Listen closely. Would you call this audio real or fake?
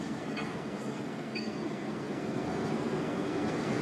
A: fake